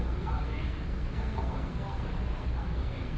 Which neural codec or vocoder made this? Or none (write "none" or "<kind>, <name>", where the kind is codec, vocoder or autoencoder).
codec, SNAC